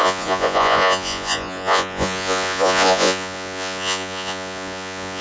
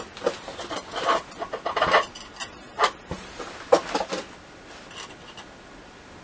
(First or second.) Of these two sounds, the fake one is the first